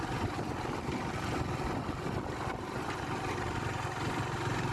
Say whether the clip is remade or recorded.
recorded